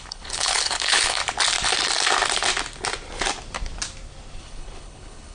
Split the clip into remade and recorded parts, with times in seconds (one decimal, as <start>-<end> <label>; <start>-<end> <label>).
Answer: 0.0-1.2 remade; 1.2-4.4 recorded; 4.4-5.3 remade